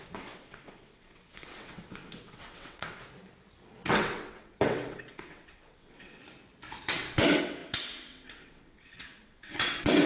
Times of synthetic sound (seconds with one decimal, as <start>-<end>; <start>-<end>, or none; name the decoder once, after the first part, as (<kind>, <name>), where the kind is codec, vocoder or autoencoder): 0.0-3.0 (vocoder, WaveNeXt); 3.9-6.2; 6.9-10.1